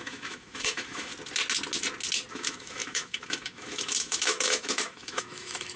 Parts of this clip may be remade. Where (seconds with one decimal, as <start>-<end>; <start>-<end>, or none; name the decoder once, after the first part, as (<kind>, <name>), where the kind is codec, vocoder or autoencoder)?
0.0-1.1 (autoencoder, DAC-VAE); 2.3-5.8